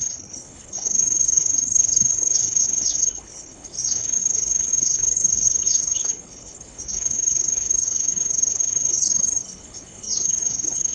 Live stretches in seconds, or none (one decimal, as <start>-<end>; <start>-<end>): none

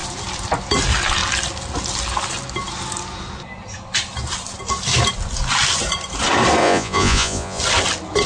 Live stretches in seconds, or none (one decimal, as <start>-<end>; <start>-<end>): 0.0-6.6; 7.6-8.3